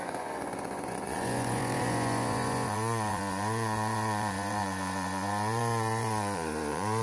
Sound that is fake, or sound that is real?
fake